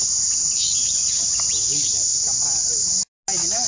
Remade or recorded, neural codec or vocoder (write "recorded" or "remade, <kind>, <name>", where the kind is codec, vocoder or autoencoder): recorded